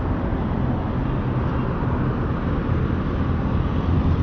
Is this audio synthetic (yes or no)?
no